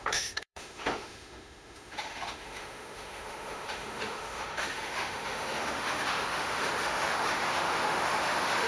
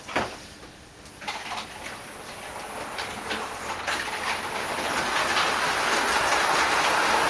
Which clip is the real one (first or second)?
second